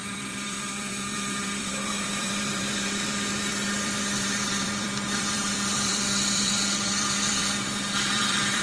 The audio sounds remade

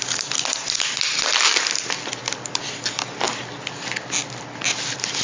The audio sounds remade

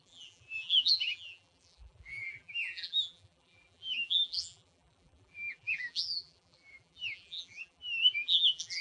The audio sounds remade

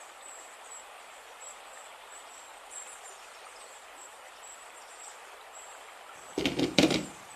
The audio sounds remade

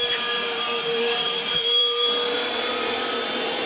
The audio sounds remade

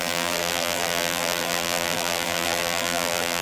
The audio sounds remade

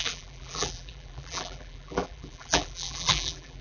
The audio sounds remade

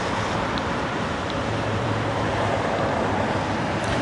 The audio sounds remade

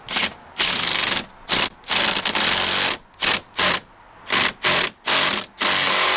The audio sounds recorded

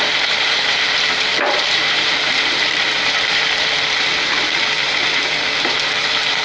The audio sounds remade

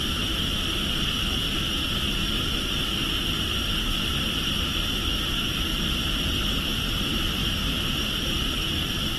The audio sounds remade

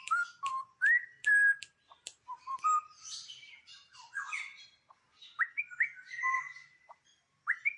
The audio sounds remade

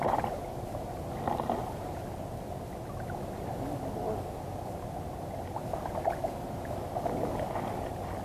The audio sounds recorded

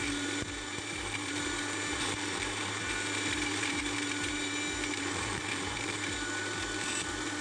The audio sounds remade